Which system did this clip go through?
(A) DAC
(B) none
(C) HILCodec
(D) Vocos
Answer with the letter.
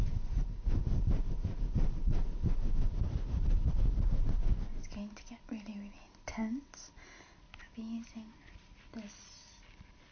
B